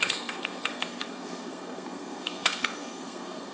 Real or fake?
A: fake